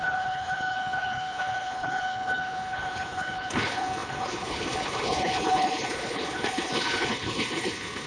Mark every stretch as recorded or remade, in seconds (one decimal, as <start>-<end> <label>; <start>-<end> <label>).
0.0-8.1 remade